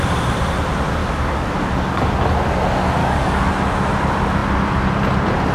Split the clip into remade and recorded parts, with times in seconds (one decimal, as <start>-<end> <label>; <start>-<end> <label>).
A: 0.0-1.0 recorded; 1.0-2.1 remade; 2.1-3.0 recorded; 3.0-3.5 remade; 3.5-5.5 recorded